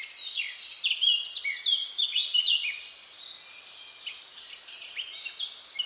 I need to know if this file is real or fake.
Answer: real